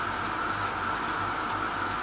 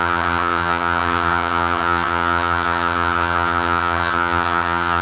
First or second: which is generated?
second